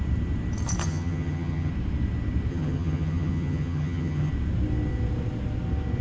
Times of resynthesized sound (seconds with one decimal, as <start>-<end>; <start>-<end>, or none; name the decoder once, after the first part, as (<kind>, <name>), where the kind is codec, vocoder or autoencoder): 0.8-1.7 (vocoder, HiFi-GAN); 2.5-4.3